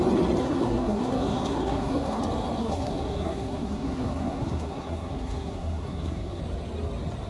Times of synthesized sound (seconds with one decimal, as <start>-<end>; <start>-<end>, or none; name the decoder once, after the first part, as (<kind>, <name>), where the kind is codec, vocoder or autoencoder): 0.4-2.2 (codec, SNAC); 2.6-6.4